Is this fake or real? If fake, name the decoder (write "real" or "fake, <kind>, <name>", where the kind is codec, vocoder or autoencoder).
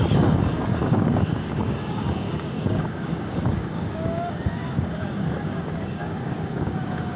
fake, codec, DAC